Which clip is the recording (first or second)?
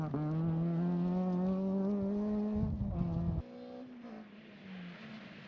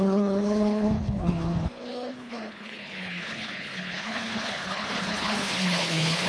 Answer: first